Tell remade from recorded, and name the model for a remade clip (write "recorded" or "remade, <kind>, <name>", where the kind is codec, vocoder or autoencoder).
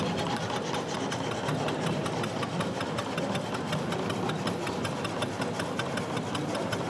recorded